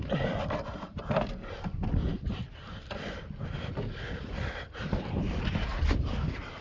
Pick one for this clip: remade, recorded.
recorded